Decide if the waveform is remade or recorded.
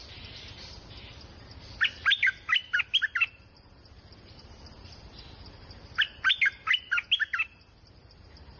recorded